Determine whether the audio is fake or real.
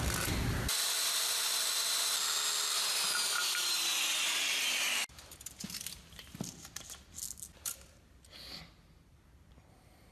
real